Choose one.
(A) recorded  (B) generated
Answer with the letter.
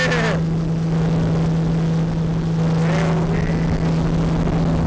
A